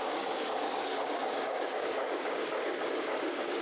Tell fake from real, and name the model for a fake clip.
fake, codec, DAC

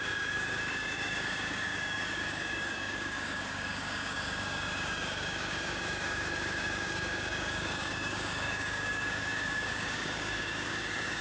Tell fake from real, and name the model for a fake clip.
fake, codec, DAC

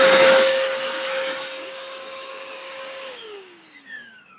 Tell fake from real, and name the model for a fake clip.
fake, codec, DAC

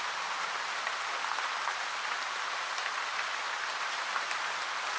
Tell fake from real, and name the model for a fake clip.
real